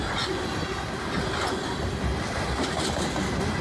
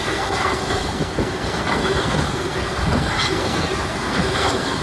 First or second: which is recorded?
first